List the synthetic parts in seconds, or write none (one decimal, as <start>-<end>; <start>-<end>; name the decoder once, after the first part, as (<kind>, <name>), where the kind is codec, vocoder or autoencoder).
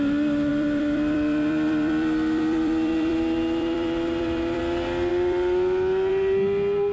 0.5-4.6 (vocoder, BigVGAN v2)